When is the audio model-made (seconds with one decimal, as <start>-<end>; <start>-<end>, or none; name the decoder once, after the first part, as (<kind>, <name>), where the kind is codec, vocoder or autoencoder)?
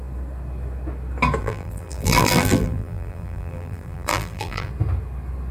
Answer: 1.4-4.7 (vocoder, BigVGAN v2)